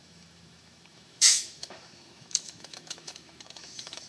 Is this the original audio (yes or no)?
no